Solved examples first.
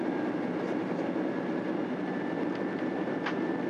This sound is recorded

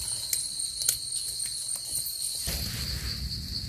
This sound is recorded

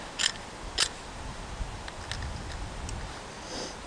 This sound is recorded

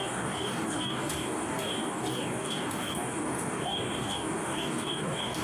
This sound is remade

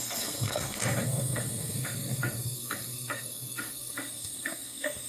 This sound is remade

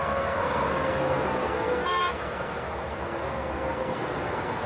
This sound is remade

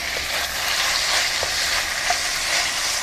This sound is recorded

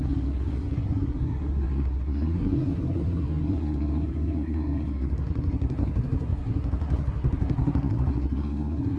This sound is remade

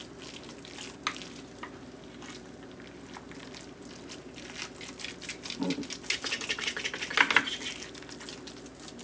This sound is recorded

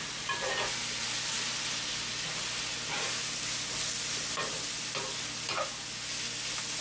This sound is recorded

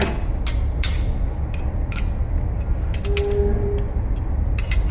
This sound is recorded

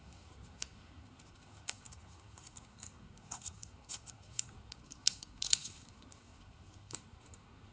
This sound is remade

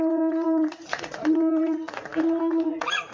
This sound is remade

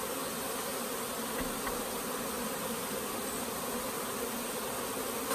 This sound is recorded